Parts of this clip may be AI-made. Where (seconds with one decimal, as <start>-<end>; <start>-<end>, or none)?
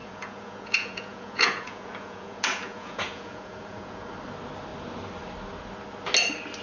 0.0-4.0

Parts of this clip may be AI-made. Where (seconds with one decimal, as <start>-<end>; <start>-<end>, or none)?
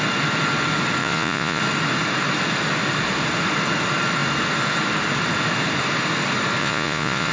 1.0-1.6; 6.6-7.3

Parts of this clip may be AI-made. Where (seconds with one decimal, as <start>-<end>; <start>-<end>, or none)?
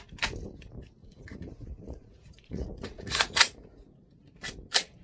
1.0-4.0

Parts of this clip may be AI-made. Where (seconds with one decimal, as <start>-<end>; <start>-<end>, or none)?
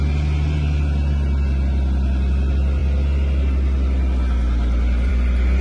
none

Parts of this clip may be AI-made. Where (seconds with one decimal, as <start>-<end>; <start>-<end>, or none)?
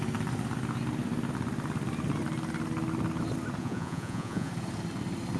3.6-4.5